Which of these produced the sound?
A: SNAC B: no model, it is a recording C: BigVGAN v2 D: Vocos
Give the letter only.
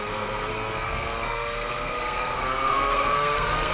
A